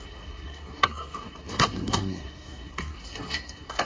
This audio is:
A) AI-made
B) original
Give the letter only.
A